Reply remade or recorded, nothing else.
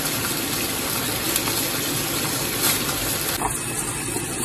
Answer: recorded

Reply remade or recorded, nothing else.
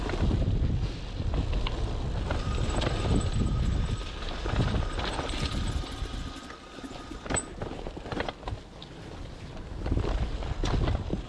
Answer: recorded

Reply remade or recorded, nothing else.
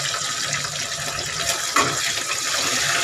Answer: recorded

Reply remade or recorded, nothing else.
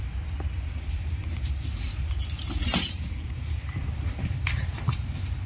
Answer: remade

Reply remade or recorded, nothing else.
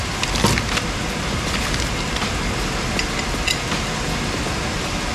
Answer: recorded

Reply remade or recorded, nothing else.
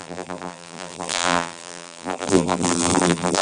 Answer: remade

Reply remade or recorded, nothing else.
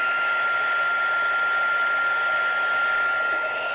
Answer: recorded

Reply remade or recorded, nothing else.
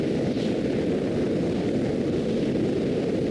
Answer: recorded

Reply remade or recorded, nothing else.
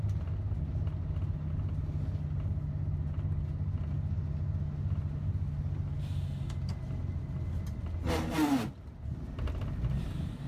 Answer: recorded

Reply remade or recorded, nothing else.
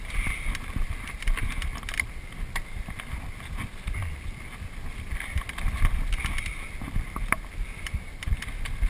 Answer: recorded